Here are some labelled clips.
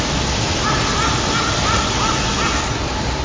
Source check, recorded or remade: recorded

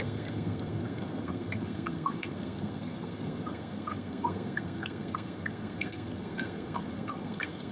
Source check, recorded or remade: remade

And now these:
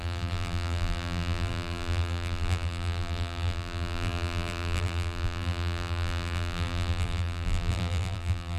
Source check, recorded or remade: remade